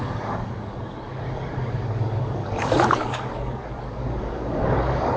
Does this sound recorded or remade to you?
remade